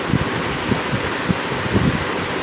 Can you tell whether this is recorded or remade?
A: recorded